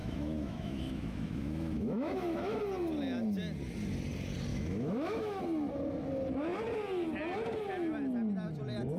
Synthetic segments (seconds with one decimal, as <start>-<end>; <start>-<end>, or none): 0.0-2.6; 4.5-5.4